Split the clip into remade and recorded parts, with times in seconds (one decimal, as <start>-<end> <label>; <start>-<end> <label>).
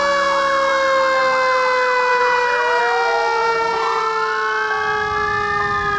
0.0-2.1 recorded; 2.1-2.8 remade; 2.8-3.4 recorded; 3.4-4.0 remade; 4.0-6.0 recorded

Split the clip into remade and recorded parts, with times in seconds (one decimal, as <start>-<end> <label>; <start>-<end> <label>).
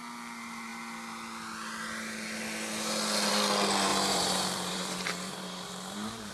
0.0-3.9 recorded; 3.9-6.3 remade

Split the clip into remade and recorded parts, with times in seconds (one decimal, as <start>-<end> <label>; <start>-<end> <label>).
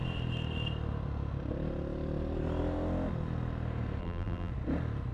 0.0-4.0 recorded; 4.0-4.5 remade; 4.5-5.1 recorded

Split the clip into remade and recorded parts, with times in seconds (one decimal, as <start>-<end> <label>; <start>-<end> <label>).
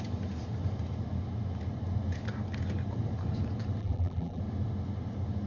0.0-3.8 recorded; 3.8-4.4 remade; 4.4-5.5 recorded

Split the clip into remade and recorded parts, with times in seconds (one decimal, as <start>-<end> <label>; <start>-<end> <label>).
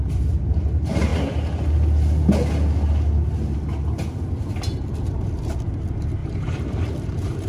0.0-1.1 remade; 1.1-5.1 recorded; 5.1-7.5 remade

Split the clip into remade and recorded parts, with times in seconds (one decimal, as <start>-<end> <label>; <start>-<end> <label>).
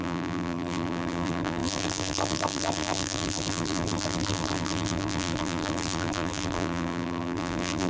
0.0-7.9 remade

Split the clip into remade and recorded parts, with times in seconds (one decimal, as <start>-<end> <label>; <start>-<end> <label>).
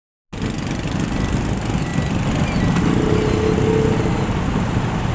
0.0-5.1 recorded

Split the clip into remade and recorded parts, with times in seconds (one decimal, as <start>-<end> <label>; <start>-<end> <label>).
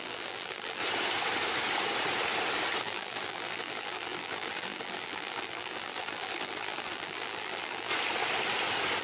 0.0-0.8 remade; 0.8-2.8 recorded; 2.8-7.9 remade; 7.9-9.0 recorded